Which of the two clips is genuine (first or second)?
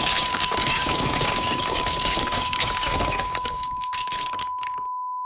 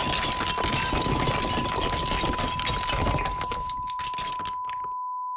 second